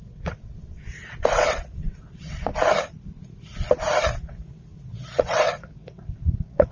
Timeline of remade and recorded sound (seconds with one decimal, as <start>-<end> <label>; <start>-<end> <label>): 0.0-2.5 remade; 2.5-4.2 recorded; 4.2-6.7 remade